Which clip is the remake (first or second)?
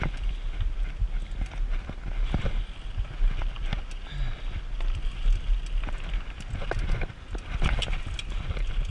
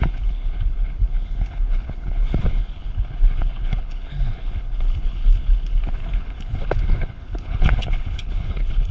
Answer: second